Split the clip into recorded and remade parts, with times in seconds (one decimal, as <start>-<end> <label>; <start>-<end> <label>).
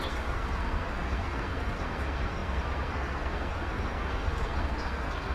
0.0-5.3 remade